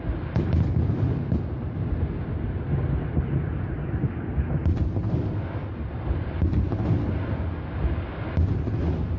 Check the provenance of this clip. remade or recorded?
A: recorded